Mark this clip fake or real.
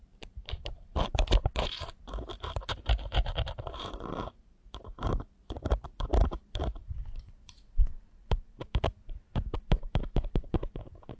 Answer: fake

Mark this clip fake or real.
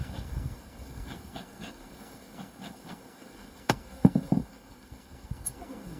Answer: fake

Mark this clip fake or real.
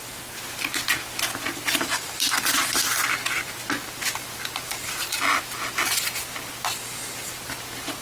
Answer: real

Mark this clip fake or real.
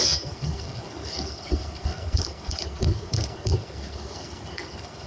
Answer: fake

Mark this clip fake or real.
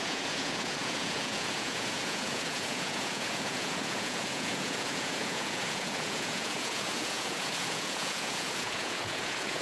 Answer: fake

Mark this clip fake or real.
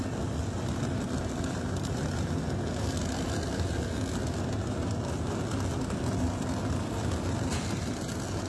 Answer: real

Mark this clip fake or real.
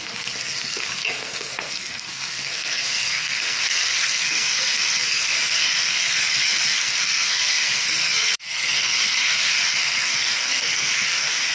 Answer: fake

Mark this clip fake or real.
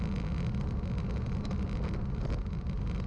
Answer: real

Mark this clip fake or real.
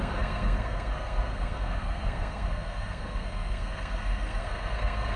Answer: fake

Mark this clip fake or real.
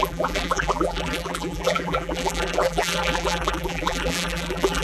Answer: fake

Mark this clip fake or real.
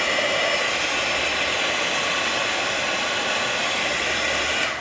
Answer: real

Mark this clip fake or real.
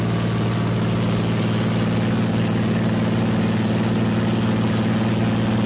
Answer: real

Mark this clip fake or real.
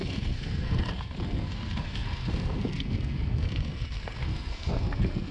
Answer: fake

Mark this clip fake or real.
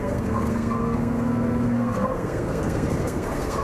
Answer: fake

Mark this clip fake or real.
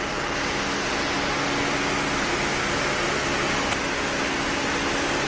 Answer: real